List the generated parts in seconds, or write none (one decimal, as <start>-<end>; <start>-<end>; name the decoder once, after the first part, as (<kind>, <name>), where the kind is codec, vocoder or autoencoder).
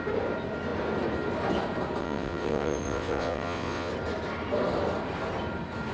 2.0-3.9 (vocoder, WaveNeXt)